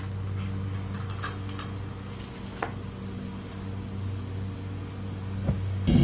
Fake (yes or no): no